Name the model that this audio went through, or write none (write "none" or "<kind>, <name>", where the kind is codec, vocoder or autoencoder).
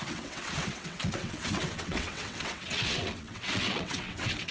vocoder, WaveNeXt